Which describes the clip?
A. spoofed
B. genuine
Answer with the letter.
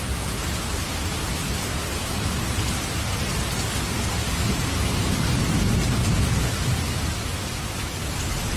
B